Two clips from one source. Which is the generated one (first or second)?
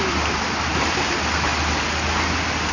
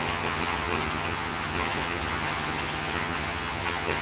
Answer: second